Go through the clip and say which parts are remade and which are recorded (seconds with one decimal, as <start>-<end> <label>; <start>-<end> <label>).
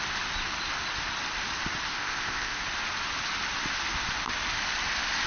0.0-1.9 recorded; 1.9-2.6 remade; 2.6-5.3 recorded